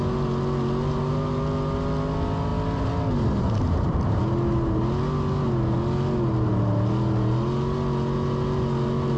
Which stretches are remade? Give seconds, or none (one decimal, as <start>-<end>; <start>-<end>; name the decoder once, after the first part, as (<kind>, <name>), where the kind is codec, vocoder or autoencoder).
none